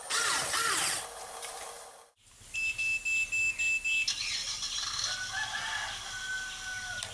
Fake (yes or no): no